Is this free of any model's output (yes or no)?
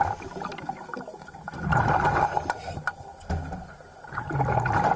yes